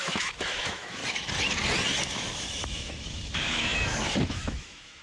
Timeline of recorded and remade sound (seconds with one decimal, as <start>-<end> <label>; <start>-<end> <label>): 0.0-1.0 remade; 1.0-2.0 recorded; 2.0-5.0 remade

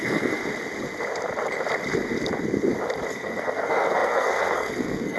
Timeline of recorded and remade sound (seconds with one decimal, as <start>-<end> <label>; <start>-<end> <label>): 0.0-0.4 remade; 0.4-3.1 recorded; 3.1-5.2 remade